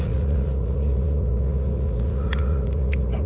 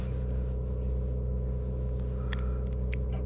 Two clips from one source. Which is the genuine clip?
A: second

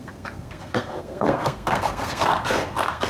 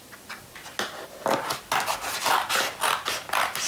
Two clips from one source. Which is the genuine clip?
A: second